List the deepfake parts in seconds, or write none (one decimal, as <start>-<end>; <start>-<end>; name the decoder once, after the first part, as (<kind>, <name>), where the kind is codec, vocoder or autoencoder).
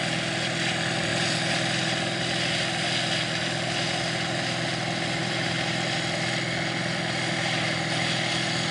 none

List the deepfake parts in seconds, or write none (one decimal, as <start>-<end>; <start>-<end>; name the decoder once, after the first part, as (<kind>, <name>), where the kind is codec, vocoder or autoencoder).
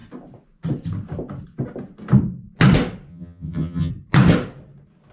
3.1-3.9 (vocoder, HiFi-GAN)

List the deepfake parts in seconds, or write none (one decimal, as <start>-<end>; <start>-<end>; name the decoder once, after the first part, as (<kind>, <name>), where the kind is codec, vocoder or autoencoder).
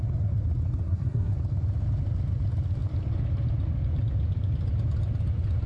0.8-1.3 (codec, SNAC)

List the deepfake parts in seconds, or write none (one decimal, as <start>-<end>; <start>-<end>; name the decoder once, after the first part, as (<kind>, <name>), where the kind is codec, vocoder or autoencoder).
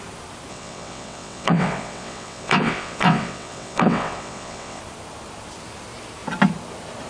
0.5-4.8 (vocoder, WaveNeXt)